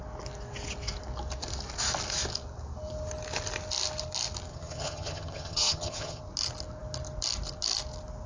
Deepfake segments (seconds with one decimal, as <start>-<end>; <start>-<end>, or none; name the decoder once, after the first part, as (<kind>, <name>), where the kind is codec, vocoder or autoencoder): 4.5-6.2 (vocoder, HiFi-GAN)